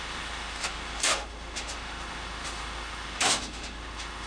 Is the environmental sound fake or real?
fake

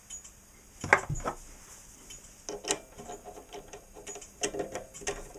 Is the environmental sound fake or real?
real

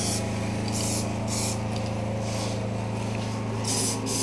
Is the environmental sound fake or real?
real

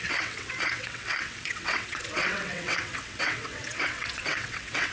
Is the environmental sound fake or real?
fake